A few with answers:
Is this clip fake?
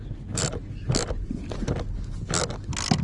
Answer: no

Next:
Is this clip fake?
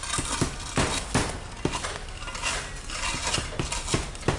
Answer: no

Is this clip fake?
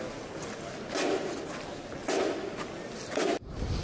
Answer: no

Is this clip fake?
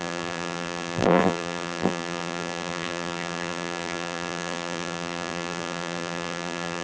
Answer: yes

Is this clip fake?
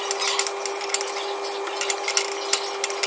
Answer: no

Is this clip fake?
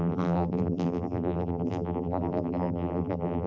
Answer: yes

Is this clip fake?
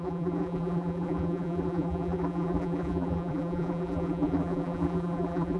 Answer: yes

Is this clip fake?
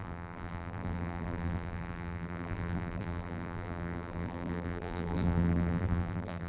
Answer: yes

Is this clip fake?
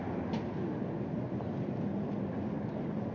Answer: no